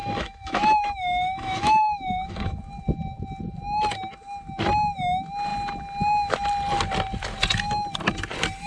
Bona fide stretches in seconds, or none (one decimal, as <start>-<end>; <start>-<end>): 2.6-8.7